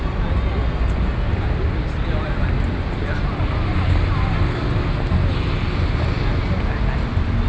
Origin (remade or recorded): recorded